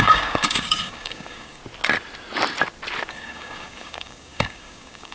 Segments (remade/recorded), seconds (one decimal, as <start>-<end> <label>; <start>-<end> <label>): 0.0-1.6 remade; 1.6-3.1 recorded; 3.1-5.1 remade